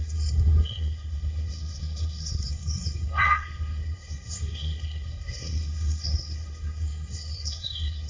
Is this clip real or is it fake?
fake